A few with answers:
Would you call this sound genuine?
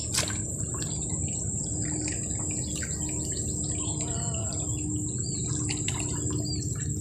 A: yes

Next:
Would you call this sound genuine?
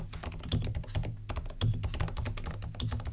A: yes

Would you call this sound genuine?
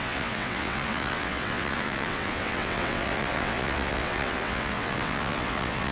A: no